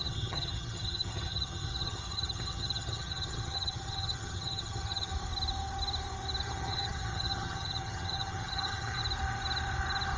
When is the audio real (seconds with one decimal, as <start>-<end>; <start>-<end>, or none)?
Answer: 5.1-6.4; 9.0-10.2